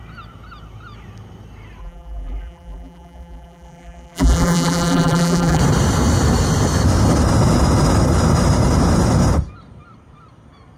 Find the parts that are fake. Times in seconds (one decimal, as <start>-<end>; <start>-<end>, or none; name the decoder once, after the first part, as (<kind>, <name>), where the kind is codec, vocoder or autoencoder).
1.8-5.6 (vocoder, BigVGAN v2)